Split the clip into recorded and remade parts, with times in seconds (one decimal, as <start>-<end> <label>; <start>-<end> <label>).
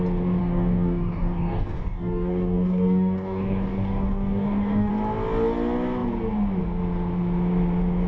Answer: 0.0-0.4 recorded; 0.4-4.9 remade; 4.9-8.1 recorded